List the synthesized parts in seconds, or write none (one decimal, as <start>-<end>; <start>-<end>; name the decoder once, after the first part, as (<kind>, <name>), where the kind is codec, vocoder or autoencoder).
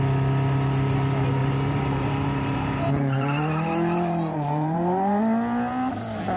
1.4-5.2 (vocoder, BigVGAN v2)